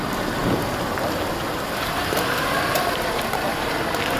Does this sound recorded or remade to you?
recorded